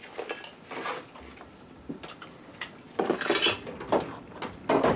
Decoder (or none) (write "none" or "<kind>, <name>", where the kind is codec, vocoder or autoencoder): none